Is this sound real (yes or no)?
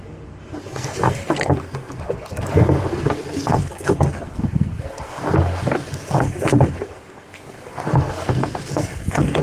no